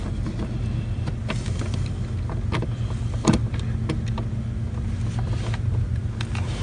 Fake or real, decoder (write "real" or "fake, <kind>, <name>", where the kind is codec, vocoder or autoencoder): real